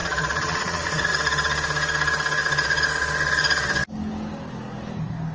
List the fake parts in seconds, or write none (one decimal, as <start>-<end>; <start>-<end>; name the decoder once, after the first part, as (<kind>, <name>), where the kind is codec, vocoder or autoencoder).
0.0-1.1 (vocoder, Vocos)